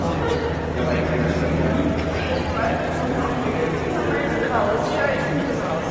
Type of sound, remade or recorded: recorded